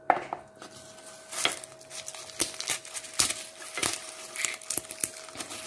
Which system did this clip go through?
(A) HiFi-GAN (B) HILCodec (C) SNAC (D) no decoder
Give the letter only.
D